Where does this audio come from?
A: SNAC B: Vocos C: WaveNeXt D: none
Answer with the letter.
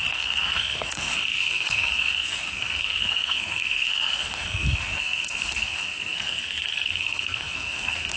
A